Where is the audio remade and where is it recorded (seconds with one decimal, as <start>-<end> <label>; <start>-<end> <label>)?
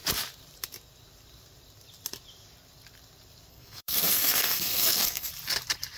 0.0-3.5 recorded; 3.5-5.3 remade; 5.3-6.0 recorded